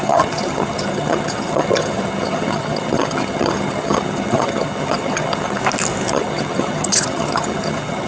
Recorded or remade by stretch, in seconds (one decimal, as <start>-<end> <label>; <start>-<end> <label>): 0.0-5.6 remade; 5.6-6.1 recorded; 6.1-8.1 remade